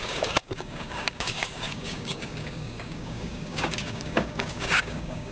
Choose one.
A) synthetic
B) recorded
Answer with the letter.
A